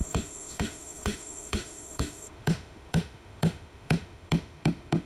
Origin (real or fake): fake